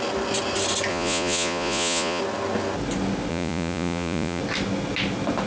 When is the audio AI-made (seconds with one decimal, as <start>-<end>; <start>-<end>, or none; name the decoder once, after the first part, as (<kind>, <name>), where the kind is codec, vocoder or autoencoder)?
0.9-2.2 (vocoder, Vocos); 3.3-4.4